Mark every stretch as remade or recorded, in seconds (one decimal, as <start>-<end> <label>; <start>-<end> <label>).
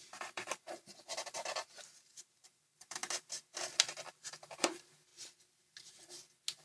0.0-3.0 remade; 3.0-4.1 recorded; 4.1-5.1 remade; 5.1-6.6 recorded